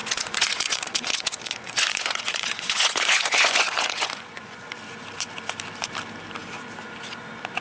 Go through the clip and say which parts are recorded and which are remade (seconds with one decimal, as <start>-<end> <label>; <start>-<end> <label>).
0.0-4.6 remade; 4.6-7.6 recorded